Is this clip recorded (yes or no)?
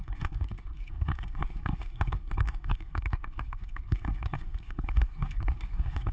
no